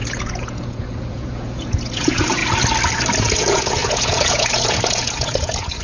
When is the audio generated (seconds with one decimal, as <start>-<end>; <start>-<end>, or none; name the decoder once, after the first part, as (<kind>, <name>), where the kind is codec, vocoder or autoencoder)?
0.0-2.4 (vocoder, Vocos); 3.2-5.8